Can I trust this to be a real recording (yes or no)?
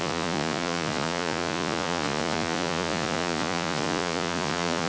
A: no